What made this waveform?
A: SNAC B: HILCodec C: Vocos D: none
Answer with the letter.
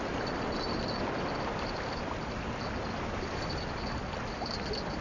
D